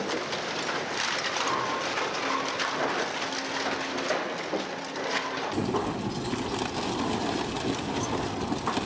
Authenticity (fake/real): real